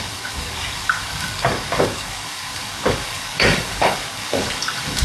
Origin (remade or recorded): remade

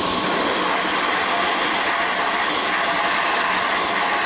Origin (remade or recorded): recorded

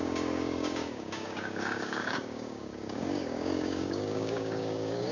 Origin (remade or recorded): remade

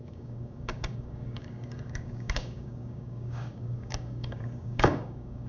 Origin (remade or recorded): remade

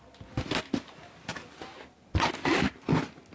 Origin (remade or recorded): recorded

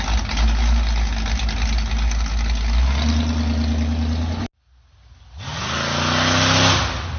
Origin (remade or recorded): recorded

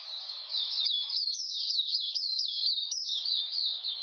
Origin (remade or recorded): remade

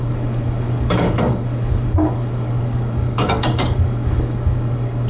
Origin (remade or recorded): remade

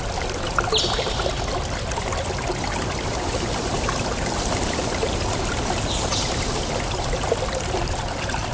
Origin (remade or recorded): recorded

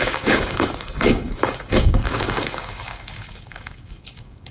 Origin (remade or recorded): remade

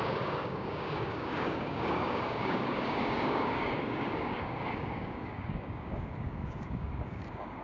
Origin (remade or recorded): remade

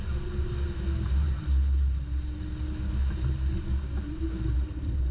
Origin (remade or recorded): recorded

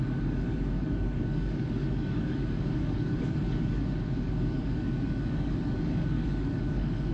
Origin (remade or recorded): remade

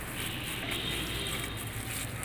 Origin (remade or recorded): recorded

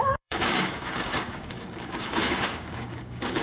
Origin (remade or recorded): remade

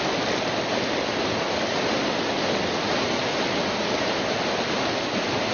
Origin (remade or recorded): recorded